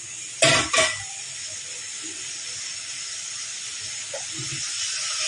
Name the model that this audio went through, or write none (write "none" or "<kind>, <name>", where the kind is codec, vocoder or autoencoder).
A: none